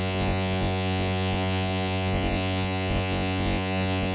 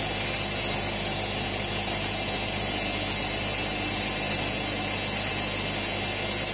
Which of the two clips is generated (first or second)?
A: first